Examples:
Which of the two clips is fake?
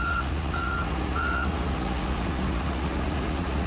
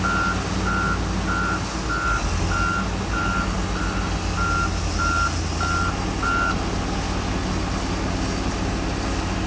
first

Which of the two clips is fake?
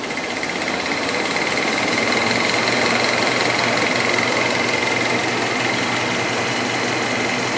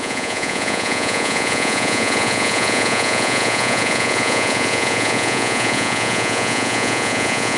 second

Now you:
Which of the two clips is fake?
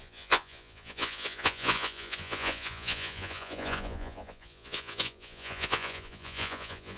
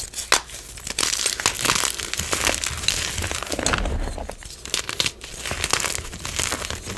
first